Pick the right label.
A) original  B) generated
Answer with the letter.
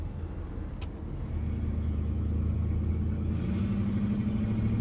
A